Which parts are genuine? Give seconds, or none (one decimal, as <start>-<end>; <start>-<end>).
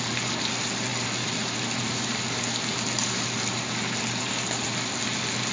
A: 0.0-5.5